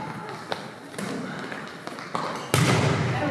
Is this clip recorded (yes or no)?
yes